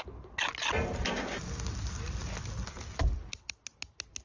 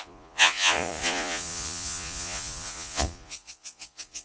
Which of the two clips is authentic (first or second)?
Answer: first